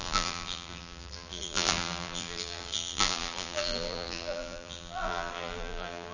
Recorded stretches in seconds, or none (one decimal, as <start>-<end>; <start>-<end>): none